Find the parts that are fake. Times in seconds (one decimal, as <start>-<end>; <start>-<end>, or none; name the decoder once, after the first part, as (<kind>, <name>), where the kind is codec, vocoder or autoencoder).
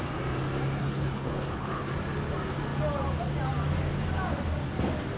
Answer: 0.8-1.9 (codec, HILCodec)